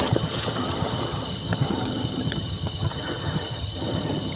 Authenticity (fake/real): fake